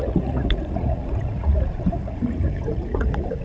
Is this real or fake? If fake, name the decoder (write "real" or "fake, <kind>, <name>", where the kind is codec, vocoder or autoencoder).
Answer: fake, vocoder, Vocos